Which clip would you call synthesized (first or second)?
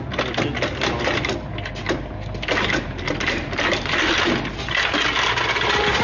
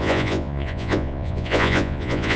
second